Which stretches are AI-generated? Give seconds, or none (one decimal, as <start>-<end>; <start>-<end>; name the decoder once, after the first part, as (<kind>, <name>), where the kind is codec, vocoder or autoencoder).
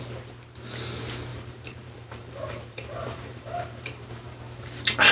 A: 1.3-4.4 (vocoder, BigVGAN v2)